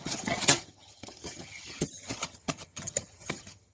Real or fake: fake